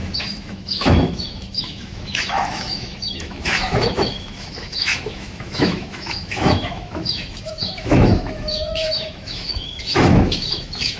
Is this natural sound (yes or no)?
no